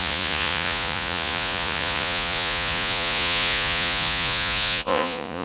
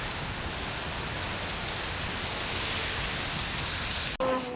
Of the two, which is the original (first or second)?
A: second